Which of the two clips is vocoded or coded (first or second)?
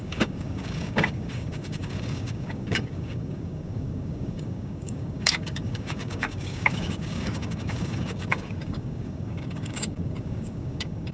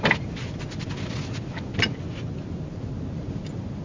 first